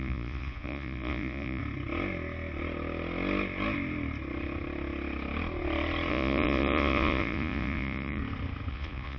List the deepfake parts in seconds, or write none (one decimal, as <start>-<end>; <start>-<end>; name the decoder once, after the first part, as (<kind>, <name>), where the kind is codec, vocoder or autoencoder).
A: 0.0-1.6 (vocoder, Vocos); 6.1-8.2; 8.7-9.2